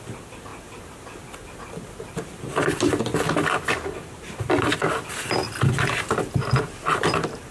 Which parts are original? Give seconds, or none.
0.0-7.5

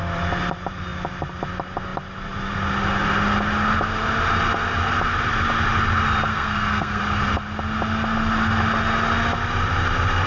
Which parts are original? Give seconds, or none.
0.0-6.3; 7.0-10.3

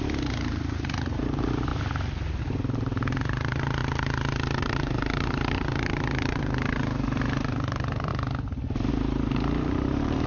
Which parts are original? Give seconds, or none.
1.7-2.4; 3.8-4.6; 8.1-8.9